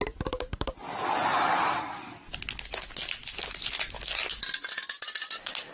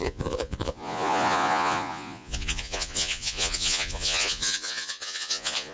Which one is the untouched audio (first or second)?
first